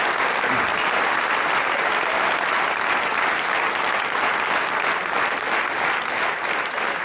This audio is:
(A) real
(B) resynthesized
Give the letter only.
A